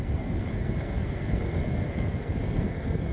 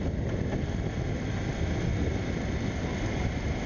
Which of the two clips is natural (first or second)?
second